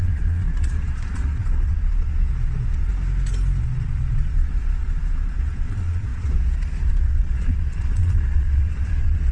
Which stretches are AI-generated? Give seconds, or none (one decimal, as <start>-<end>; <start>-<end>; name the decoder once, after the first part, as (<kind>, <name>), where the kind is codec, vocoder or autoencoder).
0.0-2.9 (vocoder, Vocos); 3.6-9.3